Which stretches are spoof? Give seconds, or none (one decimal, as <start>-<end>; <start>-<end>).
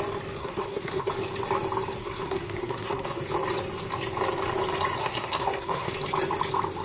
0.4-1.1; 2.0-3.2; 5.0-5.9